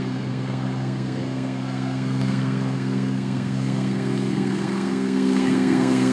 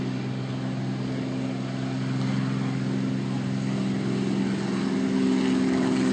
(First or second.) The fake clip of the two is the first